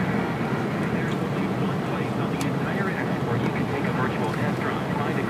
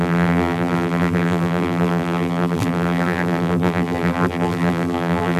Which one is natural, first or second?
first